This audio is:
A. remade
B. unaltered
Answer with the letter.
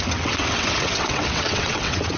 A